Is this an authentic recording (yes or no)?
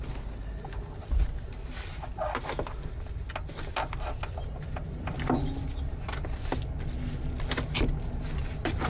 yes